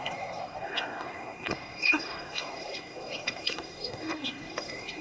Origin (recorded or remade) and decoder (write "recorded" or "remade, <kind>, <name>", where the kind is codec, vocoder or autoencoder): remade, codec, SNAC